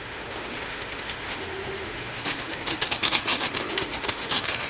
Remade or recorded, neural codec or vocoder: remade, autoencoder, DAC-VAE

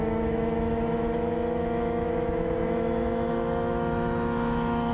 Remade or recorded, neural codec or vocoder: remade, autoencoder, DAC-VAE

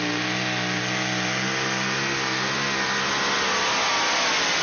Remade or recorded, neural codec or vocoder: recorded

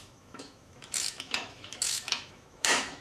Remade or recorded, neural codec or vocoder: remade, autoencoder, DAC-VAE